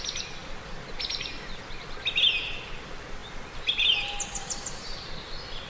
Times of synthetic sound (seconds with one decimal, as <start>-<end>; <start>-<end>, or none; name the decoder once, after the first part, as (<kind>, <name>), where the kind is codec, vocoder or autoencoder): none